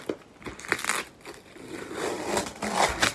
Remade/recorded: recorded